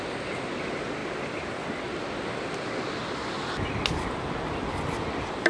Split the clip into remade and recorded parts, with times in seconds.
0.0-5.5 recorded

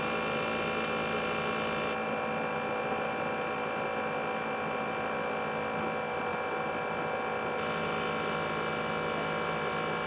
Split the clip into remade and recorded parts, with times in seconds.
0.0-10.1 recorded

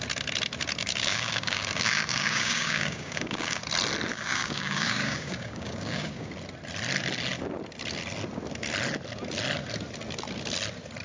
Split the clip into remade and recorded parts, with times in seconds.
0.0-0.8 recorded; 0.8-3.6 remade; 3.6-4.1 recorded; 4.1-6.3 remade; 6.3-11.0 recorded

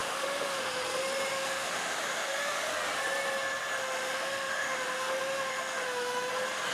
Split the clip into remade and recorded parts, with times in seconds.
0.0-0.8 remade; 0.8-1.3 recorded; 1.3-2.7 remade; 2.7-3.8 recorded; 3.8-6.3 remade; 6.3-6.7 recorded

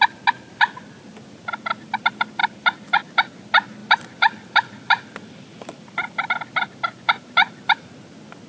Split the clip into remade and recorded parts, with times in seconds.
0.0-2.4 recorded; 2.4-3.0 remade; 3.0-3.8 recorded; 3.8-6.9 remade; 6.9-8.5 recorded

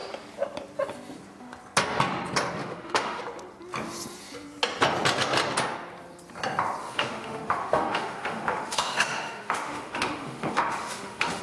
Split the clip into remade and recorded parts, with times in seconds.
0.0-2.6 recorded; 2.6-3.2 remade; 3.2-6.8 recorded; 6.8-11.4 remade

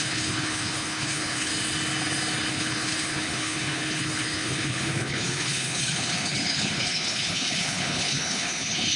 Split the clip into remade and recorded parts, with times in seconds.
0.0-1.5 remade; 1.5-2.5 recorded; 2.5-9.0 remade

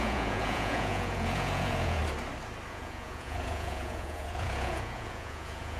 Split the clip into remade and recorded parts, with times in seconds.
0.0-2.0 remade; 2.0-2.7 recorded; 2.7-5.8 remade